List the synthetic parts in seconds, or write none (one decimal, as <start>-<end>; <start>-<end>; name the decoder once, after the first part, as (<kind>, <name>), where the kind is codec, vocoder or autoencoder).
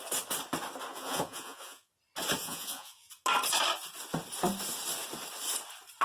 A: 0.9-1.9 (vocoder, Vocos); 2.4-3.1